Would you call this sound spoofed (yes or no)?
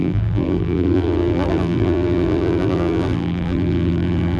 yes